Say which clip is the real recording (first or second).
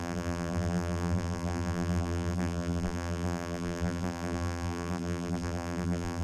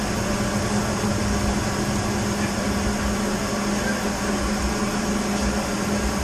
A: second